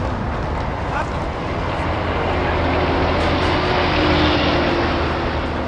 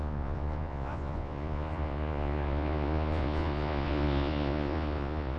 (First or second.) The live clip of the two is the first